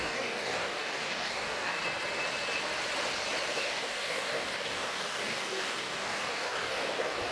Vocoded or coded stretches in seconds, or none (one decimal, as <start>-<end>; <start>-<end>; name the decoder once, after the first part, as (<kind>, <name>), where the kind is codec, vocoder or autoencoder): 0.0-1.8 (codec, DAC); 3.5-7.3